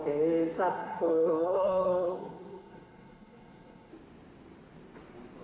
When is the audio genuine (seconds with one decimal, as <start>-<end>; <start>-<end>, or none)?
0.0-0.7; 3.9-5.4